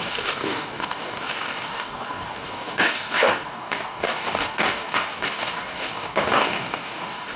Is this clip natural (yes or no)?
no